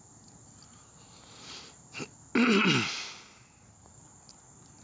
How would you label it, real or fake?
real